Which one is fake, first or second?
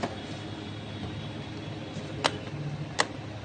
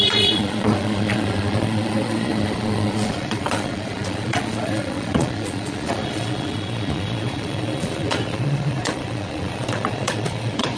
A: second